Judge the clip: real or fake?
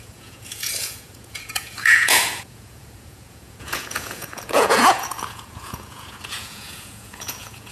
fake